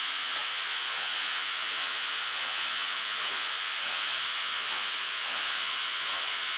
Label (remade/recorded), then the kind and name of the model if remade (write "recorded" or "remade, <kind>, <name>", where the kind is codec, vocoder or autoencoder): remade, vocoder, Vocos